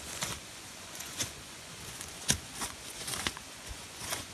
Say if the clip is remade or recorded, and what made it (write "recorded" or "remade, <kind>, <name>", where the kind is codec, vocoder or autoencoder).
remade, vocoder, Vocos